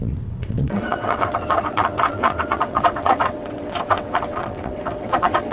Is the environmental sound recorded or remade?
remade